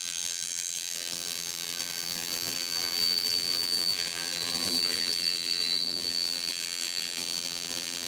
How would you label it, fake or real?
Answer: fake